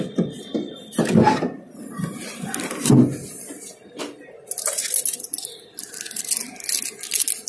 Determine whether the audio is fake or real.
real